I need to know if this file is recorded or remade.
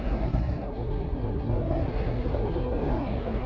remade